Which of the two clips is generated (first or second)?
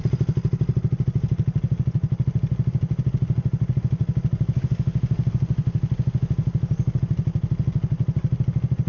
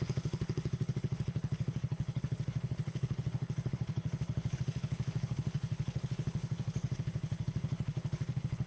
second